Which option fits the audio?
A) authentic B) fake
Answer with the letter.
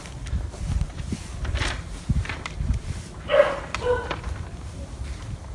A